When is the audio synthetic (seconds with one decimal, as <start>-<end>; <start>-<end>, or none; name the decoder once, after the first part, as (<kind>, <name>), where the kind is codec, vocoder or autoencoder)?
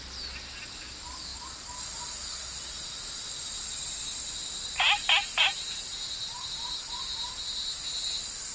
none